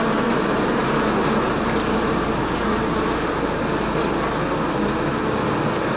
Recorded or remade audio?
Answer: recorded